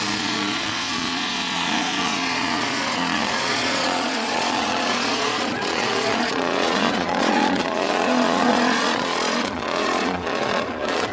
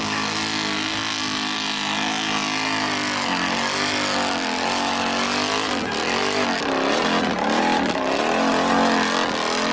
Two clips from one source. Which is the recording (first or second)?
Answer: second